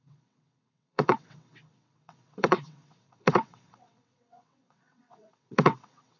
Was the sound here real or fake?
fake